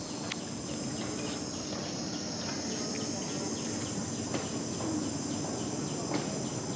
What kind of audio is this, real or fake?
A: real